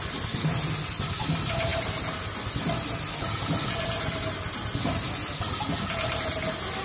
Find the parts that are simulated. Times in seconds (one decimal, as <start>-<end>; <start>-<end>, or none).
none